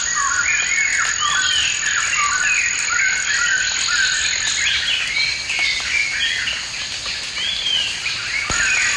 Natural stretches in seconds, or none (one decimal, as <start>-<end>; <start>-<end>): 0.0-9.0